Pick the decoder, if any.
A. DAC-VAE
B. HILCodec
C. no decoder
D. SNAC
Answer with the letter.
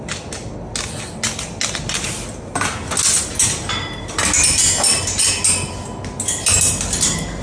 C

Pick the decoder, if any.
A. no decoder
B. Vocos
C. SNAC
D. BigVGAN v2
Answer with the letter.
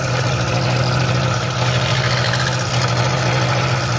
A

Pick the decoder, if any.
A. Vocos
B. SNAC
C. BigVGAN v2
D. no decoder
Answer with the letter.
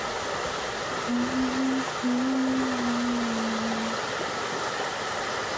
D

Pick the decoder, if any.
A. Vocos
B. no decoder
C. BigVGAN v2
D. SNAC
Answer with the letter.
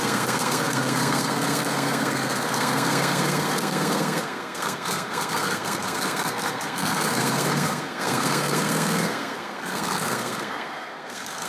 D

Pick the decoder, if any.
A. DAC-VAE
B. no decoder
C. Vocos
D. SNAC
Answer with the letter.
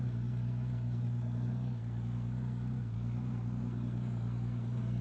D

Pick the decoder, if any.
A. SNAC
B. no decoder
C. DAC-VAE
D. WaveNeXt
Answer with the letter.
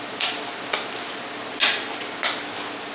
B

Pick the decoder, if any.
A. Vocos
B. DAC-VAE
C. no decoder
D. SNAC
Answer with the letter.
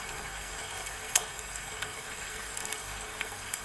D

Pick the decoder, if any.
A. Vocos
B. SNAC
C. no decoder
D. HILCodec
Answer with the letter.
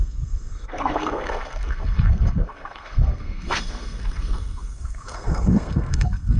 B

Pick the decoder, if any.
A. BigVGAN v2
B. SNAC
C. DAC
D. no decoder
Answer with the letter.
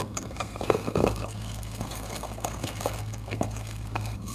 B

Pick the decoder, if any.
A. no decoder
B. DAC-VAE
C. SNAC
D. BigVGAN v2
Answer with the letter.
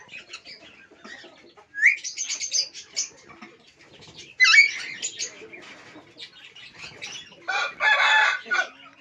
A